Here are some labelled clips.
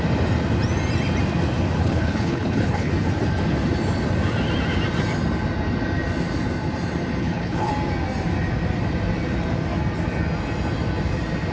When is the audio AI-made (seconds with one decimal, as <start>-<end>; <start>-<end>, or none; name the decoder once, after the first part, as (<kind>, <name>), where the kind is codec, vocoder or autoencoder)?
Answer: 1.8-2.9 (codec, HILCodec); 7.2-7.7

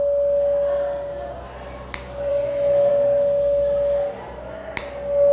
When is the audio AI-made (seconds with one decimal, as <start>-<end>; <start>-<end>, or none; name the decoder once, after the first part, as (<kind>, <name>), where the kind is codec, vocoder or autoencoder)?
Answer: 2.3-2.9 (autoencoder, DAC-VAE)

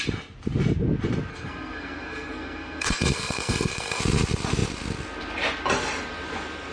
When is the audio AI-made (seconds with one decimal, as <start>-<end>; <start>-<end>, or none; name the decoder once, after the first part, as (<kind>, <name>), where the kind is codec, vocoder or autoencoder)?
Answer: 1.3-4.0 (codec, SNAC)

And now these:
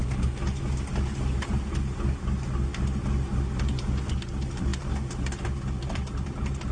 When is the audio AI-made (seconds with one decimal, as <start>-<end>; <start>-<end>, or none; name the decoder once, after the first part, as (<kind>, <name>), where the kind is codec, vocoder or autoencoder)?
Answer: 4.0-4.7 (vocoder, BigVGAN v2); 5.9-6.7

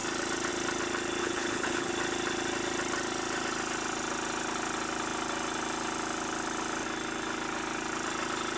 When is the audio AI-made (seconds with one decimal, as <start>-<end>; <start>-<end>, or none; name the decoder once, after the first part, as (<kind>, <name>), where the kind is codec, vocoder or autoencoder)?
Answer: 1.2-1.9 (codec, HILCodec)